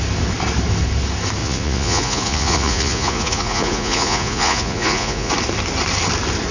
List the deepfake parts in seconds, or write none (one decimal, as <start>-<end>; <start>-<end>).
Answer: 1.4-5.3